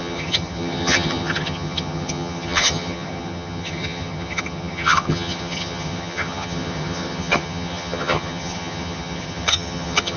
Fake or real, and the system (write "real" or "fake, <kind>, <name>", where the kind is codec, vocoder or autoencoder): fake, vocoder, HiFi-GAN